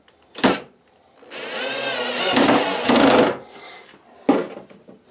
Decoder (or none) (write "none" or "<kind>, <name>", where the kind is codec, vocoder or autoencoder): none